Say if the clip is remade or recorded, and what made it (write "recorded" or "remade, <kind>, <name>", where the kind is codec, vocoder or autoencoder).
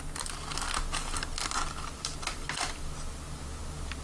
recorded